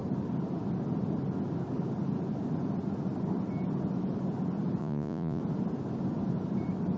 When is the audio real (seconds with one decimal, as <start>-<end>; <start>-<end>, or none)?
0.0-4.8; 5.4-7.0